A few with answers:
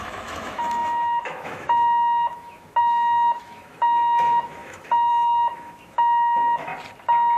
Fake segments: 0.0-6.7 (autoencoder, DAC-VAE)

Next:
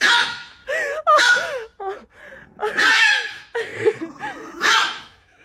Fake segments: 0.0-0.6 (autoencoder, DAC-VAE); 1.2-1.7; 2.9-3.7; 4.6-5.4